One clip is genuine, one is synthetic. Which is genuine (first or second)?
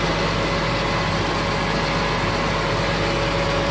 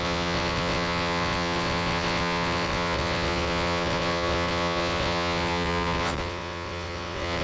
first